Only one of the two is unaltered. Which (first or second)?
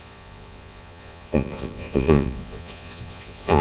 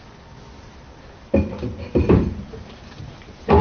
second